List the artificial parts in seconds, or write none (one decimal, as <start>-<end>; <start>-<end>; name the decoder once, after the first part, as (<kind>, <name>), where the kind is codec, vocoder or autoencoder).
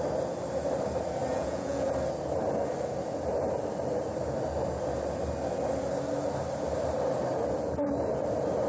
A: 1.3-1.9 (vocoder, Vocos)